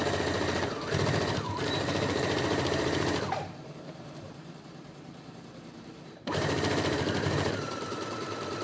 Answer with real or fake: fake